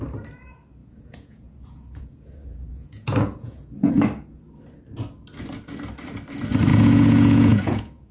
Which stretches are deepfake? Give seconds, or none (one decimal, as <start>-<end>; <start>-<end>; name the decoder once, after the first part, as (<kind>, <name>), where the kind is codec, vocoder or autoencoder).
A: 0.8-3.9 (vocoder, Vocos); 6.7-8.1